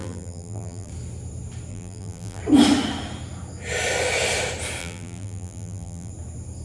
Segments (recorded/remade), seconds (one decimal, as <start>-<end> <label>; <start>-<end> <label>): 0.0-0.9 remade; 0.9-1.7 recorded; 1.7-2.4 remade; 2.4-4.8 recorded; 4.8-6.1 remade; 6.1-6.6 recorded